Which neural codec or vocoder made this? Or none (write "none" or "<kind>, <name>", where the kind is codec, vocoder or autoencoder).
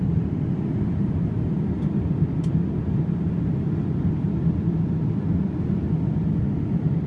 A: none